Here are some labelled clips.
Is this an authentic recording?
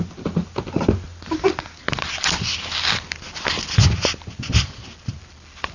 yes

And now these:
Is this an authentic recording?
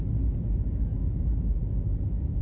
yes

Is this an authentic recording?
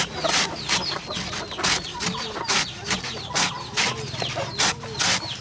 yes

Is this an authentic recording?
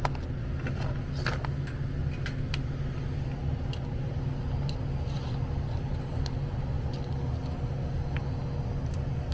yes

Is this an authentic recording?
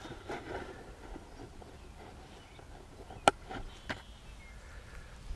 yes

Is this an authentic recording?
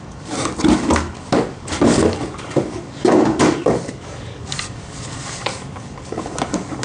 no